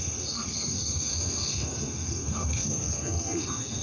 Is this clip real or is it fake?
fake